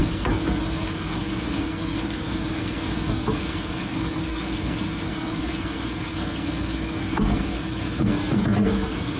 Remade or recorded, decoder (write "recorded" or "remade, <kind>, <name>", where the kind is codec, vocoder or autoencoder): remade, codec, SNAC